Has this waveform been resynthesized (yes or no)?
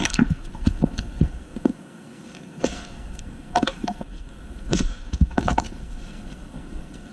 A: yes